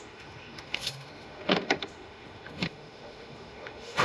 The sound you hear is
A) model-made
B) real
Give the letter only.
A